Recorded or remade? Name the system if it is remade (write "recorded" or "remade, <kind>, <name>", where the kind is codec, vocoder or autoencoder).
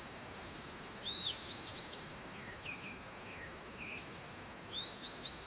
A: remade, autoencoder, DAC-VAE